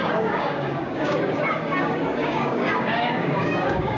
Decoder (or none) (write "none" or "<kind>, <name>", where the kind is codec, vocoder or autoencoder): codec, DAC